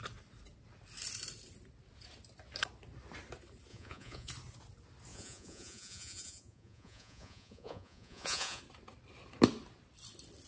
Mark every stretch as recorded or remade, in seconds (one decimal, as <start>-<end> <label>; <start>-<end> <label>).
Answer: 0.0-3.7 recorded; 3.7-4.3 remade; 4.3-5.1 recorded; 5.1-8.6 remade; 8.6-10.5 recorded